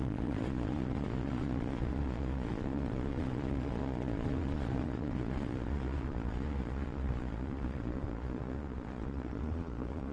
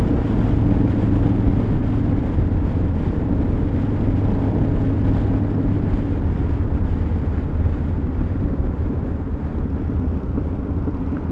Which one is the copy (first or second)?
first